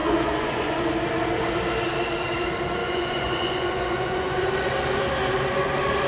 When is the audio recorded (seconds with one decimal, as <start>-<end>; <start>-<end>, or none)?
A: 0.9-2.8; 4.4-6.1